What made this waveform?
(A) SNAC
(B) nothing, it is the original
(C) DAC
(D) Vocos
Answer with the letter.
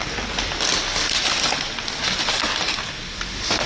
B